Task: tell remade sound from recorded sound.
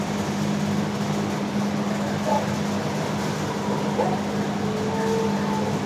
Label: recorded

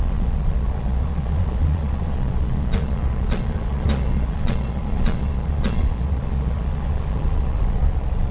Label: remade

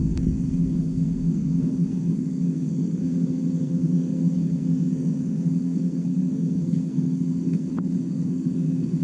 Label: remade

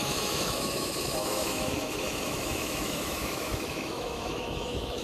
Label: remade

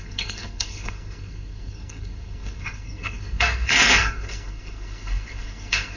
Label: remade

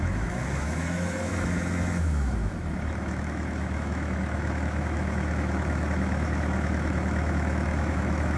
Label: remade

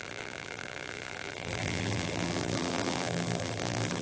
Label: remade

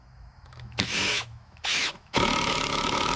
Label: remade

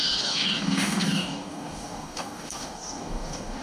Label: remade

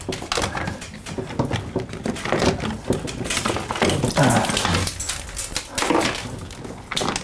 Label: recorded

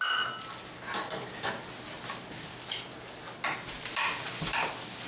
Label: recorded